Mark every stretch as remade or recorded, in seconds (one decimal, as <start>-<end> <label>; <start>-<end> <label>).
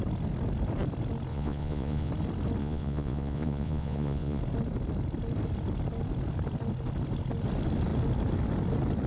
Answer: 0.0-1.3 recorded; 1.3-2.1 remade; 2.1-2.6 recorded; 2.6-4.4 remade; 4.4-9.1 recorded